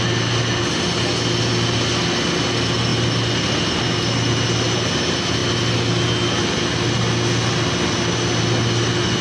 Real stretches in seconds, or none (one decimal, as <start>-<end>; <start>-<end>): 0.0-9.2